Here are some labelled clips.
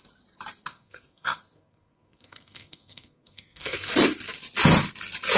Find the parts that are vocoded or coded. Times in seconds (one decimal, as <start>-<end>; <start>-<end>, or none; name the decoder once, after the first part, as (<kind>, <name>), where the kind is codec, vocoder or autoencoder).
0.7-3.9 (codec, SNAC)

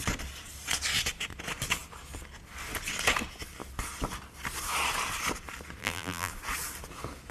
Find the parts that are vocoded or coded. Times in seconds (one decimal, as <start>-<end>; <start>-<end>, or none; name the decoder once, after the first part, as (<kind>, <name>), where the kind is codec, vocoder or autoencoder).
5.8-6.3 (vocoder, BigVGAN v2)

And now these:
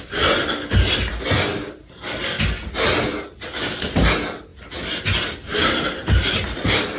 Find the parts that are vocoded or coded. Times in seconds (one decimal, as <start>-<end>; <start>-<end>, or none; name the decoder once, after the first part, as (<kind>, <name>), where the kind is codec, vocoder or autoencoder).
5.5-7.0 (vocoder, BigVGAN v2)